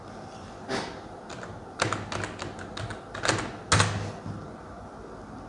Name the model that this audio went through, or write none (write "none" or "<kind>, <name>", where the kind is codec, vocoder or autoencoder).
none